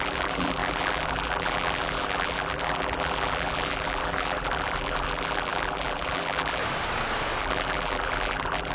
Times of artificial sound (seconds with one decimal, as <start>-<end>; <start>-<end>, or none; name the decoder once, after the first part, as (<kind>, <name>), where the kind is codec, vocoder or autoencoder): 0.0-6.6 (vocoder, BigVGAN v2); 7.4-8.7